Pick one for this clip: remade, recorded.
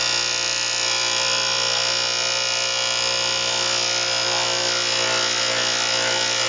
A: recorded